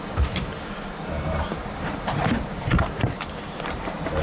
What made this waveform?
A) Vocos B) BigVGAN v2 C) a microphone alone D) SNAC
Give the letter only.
B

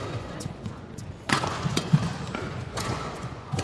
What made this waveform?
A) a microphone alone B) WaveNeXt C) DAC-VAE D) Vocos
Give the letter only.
D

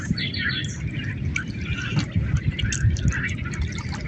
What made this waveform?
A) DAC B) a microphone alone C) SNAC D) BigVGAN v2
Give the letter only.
B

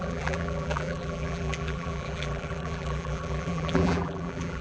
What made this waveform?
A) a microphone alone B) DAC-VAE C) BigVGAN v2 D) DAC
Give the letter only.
C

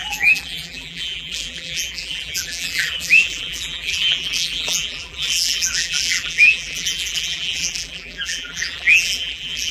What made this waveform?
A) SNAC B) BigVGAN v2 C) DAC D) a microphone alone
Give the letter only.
B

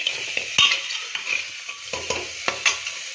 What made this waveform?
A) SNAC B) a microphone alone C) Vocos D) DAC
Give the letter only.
B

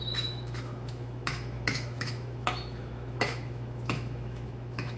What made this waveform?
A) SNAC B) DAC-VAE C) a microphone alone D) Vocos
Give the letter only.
B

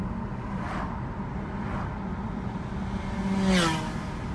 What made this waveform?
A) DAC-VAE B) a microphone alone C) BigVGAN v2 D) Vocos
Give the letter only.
B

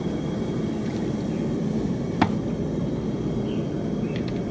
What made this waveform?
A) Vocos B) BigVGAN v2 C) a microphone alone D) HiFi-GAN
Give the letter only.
C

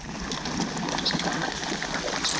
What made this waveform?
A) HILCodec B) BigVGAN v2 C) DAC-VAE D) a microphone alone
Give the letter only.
D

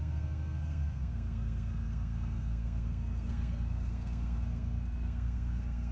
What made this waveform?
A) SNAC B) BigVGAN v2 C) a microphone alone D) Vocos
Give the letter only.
A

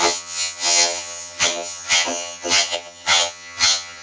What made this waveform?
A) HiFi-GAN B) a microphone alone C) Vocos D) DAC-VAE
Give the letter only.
A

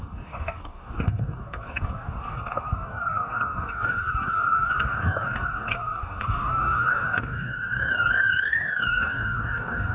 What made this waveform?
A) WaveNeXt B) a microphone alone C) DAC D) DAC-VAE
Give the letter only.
C